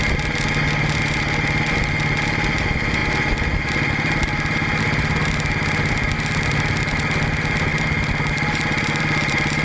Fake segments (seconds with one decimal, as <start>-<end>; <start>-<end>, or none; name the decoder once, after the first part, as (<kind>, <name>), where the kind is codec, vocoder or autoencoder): none